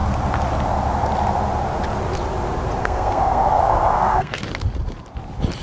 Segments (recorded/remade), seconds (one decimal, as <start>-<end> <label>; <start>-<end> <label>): 0.0-2.8 recorded; 2.8-4.4 remade; 4.4-5.6 recorded